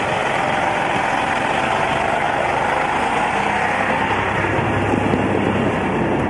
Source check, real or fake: real